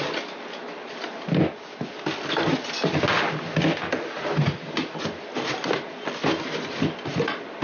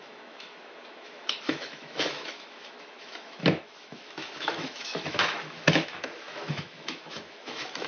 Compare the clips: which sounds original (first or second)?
first